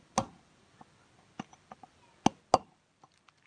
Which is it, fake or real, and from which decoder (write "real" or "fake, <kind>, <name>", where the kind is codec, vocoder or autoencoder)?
real